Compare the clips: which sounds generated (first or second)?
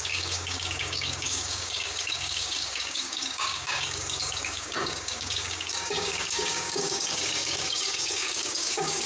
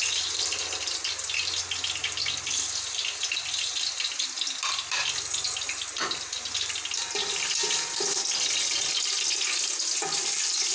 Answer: first